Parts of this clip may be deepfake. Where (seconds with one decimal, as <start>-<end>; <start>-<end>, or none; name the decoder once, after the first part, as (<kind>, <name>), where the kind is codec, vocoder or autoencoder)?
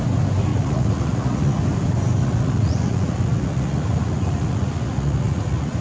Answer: 0.5-1.6 (vocoder, Vocos); 2.2-5.8